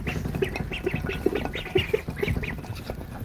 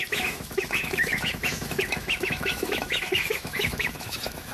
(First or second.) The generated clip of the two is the second